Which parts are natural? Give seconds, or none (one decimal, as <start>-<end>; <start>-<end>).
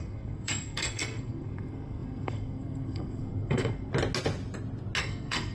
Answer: 3.9-5.0